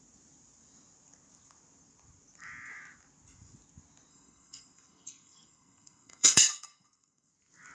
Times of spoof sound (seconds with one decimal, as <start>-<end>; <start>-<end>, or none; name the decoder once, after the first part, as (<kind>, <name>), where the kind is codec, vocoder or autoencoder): 4.1-7.3 (codec, SNAC)